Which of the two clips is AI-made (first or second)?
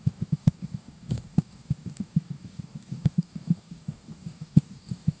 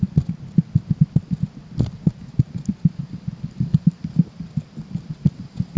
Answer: first